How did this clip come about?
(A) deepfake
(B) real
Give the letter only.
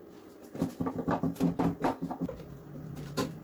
B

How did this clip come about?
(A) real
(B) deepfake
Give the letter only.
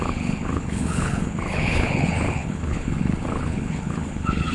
B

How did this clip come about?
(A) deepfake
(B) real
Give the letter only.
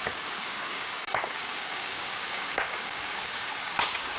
A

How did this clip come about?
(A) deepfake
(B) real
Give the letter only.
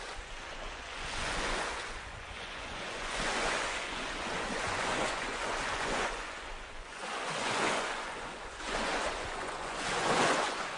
A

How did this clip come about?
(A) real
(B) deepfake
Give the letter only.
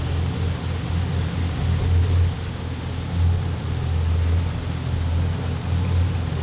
A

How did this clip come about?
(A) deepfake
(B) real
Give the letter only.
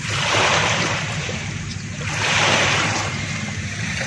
A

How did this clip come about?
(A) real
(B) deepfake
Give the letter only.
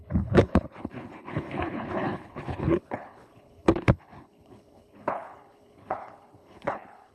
B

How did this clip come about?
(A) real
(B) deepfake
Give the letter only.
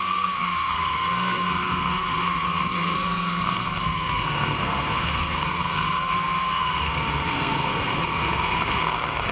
B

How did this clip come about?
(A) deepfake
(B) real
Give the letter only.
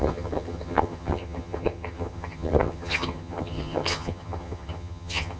A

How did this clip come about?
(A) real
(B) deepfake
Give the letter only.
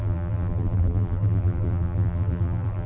B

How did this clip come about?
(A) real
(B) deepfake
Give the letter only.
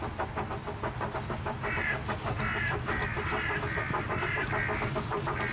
A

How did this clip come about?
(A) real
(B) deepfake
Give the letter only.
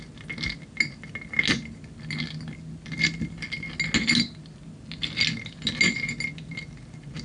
A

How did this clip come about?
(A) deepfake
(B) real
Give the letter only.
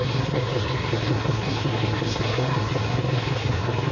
A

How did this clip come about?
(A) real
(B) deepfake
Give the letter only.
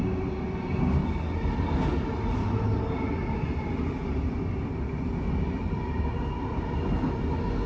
A